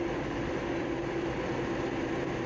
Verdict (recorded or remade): recorded